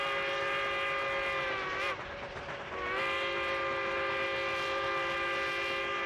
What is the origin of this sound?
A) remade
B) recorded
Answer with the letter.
B